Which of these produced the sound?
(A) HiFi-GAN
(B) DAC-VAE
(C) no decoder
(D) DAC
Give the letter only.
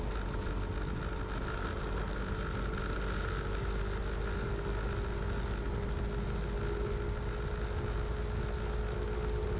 C